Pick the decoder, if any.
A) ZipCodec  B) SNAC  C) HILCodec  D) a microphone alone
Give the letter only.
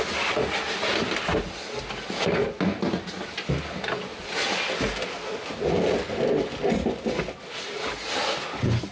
D